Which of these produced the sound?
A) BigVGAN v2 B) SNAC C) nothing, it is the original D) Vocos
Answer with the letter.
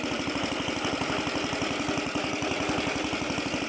C